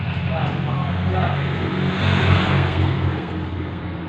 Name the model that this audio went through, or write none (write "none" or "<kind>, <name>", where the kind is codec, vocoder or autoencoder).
codec, SNAC